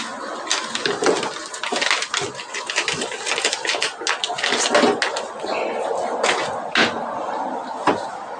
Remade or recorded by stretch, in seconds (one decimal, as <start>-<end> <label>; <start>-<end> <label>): 0.0-8.4 recorded